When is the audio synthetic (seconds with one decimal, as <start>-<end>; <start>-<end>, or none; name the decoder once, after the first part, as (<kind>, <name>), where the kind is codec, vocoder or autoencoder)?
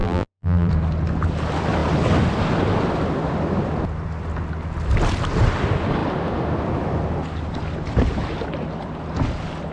0.0-0.7 (vocoder, BigVGAN v2)